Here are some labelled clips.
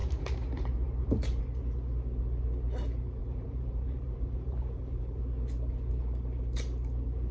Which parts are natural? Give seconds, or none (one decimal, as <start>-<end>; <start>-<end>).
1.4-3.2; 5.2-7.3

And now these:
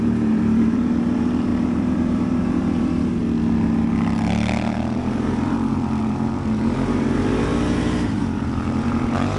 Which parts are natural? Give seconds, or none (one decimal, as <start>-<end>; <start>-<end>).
3.2-5.0

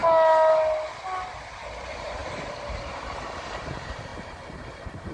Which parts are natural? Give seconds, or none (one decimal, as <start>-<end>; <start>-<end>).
0.0-1.8

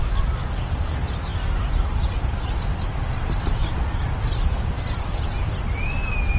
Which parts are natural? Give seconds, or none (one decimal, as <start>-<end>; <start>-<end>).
0.0-1.3; 4.5-6.4